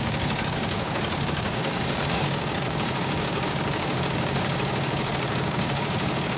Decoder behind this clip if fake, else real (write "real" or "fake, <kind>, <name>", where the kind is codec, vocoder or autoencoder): fake, codec, DAC